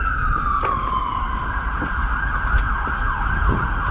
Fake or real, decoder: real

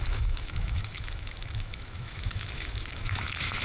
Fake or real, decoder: fake, autoencoder, DAC-VAE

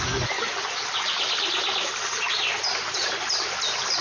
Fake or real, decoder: real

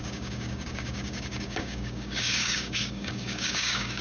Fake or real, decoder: fake, codec, DAC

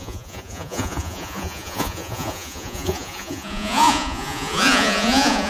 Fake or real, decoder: fake, vocoder, Vocos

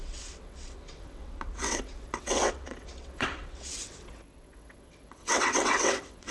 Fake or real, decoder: fake, vocoder, WaveNeXt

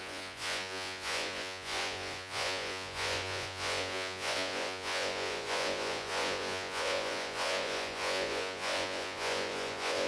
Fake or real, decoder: fake, vocoder, Vocos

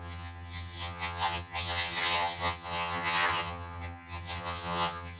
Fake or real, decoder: fake, vocoder, HiFi-GAN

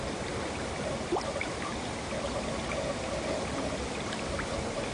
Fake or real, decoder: real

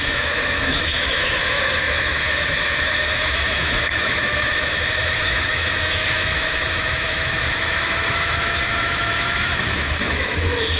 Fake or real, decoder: fake, autoencoder, DAC-VAE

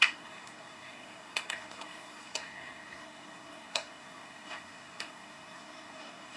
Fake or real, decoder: fake, codec, SNAC